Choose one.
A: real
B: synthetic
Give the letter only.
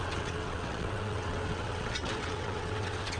B